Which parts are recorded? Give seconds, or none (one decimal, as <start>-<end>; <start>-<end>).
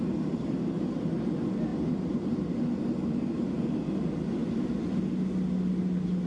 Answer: 0.0-6.3